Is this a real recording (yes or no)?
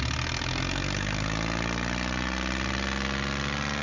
yes